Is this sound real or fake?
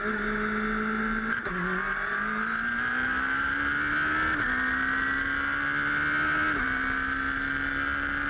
real